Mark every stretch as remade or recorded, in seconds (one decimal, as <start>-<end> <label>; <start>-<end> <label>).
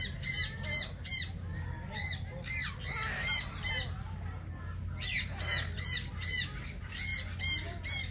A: 0.0-8.1 recorded